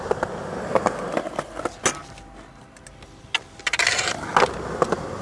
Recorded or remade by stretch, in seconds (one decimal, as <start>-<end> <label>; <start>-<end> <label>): 0.0-5.2 recorded